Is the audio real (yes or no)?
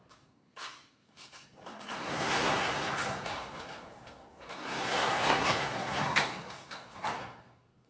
no